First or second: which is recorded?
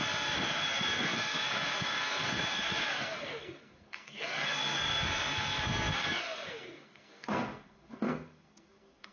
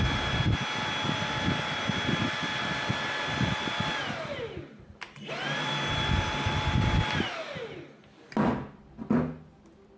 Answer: second